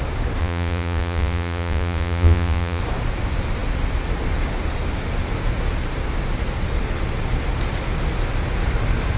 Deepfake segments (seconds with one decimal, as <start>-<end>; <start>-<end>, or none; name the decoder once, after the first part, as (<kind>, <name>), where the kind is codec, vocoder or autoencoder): 0.4-2.8 (vocoder, Vocos)